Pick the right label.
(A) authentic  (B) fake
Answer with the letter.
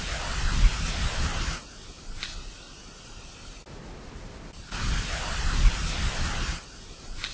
A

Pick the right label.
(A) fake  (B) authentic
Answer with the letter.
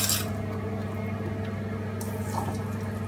B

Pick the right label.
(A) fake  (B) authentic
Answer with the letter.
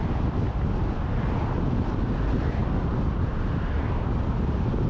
B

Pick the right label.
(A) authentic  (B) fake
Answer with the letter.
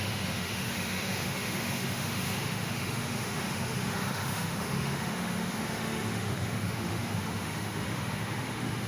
B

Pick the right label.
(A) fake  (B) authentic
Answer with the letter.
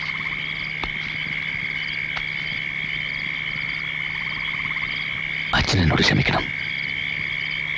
B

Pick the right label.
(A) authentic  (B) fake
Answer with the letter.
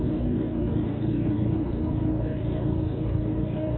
B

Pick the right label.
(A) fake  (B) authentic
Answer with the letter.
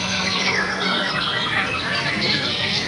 A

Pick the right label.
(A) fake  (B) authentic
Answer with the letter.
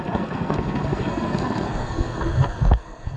A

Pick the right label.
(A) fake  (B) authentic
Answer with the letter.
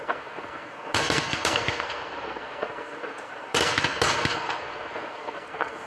A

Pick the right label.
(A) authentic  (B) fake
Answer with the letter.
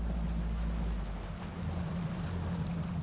A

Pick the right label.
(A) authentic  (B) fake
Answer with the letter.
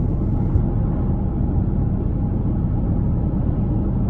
A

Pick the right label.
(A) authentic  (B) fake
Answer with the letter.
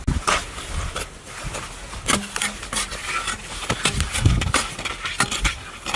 A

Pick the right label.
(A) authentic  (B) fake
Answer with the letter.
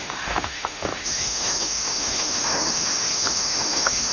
B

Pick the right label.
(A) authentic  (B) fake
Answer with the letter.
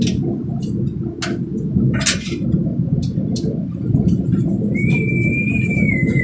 A